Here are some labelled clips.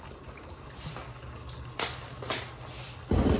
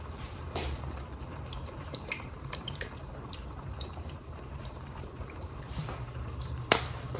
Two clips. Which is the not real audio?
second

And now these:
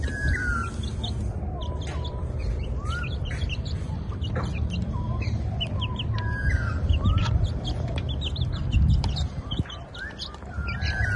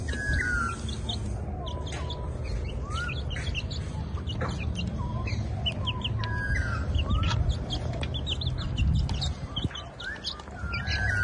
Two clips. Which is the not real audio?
first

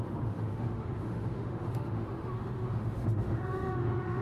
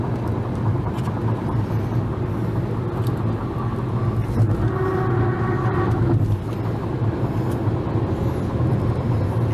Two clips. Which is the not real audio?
first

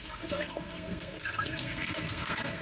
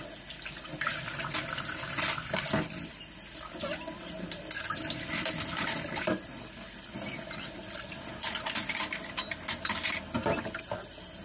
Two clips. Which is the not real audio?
first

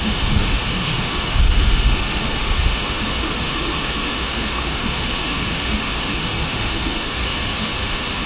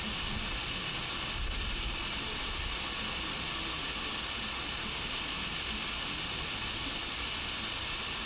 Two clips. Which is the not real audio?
first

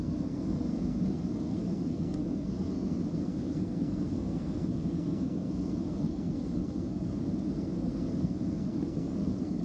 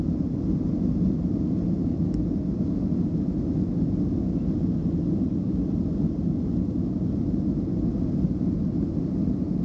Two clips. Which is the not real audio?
first